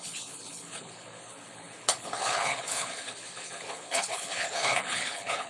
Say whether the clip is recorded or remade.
remade